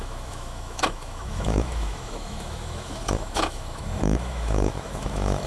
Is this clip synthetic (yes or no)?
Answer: yes